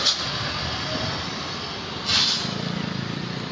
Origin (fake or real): real